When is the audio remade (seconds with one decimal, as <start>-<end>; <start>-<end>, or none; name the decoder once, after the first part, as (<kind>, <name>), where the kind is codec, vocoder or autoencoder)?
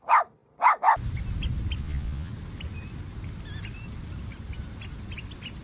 1.8-2.3 (vocoder, Vocos)